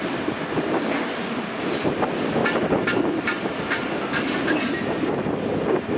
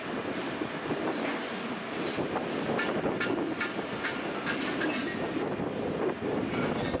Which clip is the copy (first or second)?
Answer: first